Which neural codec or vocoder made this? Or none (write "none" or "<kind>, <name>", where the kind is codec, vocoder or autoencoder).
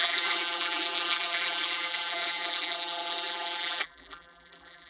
vocoder, BigVGAN v2